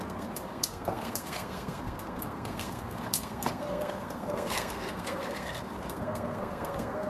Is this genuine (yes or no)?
no